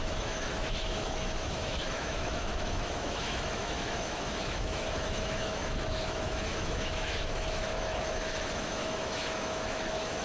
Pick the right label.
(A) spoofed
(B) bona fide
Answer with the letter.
A